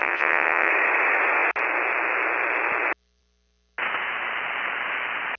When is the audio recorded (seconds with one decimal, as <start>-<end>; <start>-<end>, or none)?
0.7-5.4